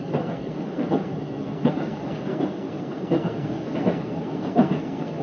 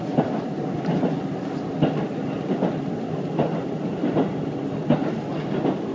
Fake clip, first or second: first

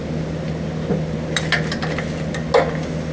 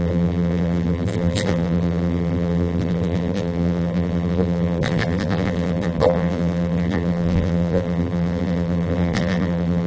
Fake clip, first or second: second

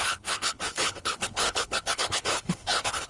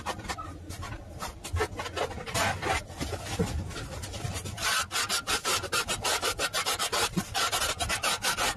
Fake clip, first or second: first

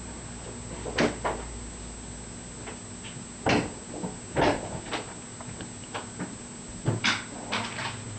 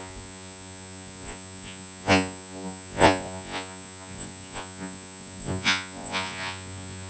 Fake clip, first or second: second